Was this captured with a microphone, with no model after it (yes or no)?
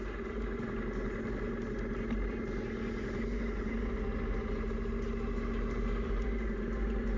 yes